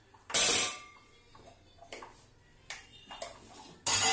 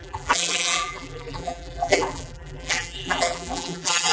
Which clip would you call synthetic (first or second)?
second